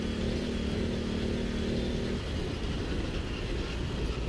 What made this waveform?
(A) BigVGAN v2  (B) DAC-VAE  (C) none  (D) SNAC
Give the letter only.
C